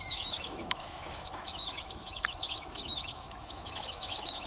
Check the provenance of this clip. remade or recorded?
remade